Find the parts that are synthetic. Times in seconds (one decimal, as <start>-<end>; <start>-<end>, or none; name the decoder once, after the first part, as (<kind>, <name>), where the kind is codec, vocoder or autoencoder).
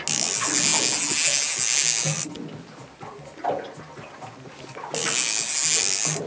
none